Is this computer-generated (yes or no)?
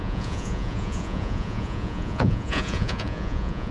yes